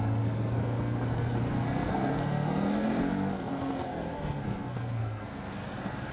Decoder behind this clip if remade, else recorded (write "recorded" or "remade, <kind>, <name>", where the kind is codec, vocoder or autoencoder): remade, codec, SNAC